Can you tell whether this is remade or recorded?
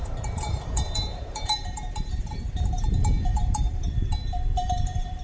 remade